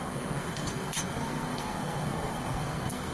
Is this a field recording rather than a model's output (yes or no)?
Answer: no